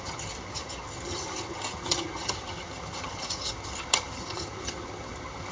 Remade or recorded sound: remade